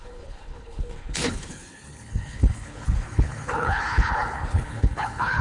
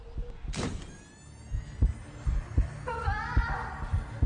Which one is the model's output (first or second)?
first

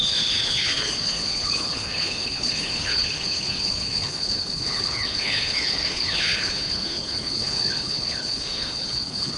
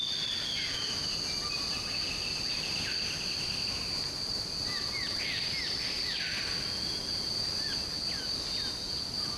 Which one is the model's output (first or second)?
first